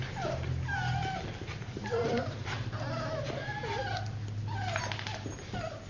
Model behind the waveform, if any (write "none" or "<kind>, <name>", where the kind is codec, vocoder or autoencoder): none